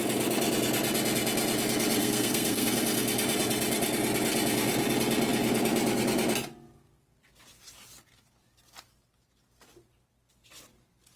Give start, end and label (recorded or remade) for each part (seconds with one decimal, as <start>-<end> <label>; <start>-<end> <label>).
0.0-2.0 recorded; 2.0-2.8 remade; 2.8-11.2 recorded